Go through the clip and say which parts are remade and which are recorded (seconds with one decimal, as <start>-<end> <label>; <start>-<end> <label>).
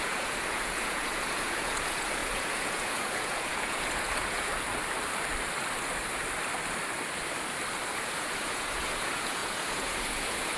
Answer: 0.0-4.5 remade; 4.5-7.9 recorded; 7.9-10.6 remade